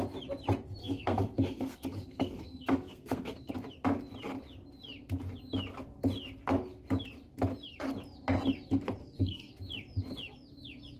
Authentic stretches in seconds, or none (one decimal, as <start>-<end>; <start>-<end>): 0.0-0.8; 3.5-9.0; 9.5-11.0